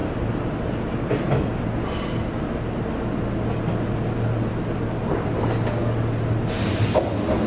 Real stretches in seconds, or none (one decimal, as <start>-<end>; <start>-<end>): 0.0-7.5

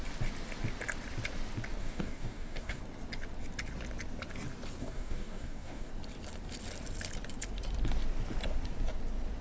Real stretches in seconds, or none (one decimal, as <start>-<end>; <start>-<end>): 0.0-1.8; 2.8-4.8; 5.9-9.4

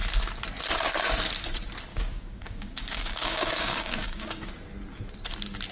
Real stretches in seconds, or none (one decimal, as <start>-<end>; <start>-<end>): 0.0-1.9; 4.5-5.7